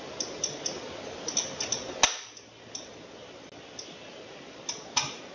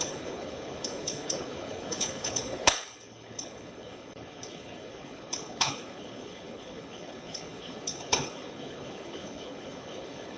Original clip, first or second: first